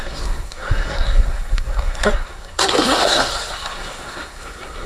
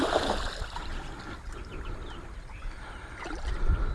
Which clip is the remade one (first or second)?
first